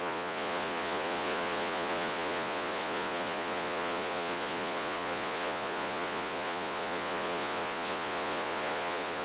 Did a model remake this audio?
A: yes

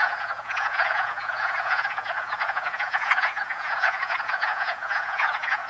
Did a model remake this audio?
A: yes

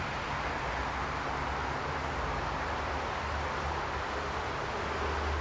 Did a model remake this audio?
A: no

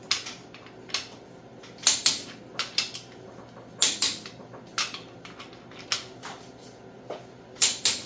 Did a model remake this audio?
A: no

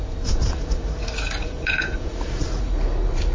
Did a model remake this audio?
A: yes